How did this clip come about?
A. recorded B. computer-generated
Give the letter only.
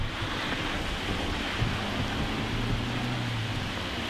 A